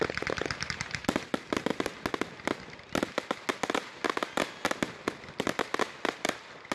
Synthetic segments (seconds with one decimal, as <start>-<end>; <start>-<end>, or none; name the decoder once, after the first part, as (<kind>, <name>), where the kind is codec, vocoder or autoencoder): none